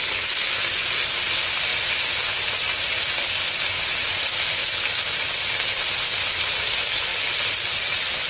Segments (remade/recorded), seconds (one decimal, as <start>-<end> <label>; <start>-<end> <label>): 0.0-8.3 recorded